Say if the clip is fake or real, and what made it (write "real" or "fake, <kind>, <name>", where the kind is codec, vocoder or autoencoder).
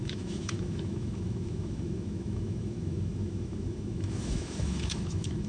fake, autoencoder, DAC-VAE